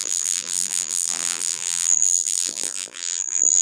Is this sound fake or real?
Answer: fake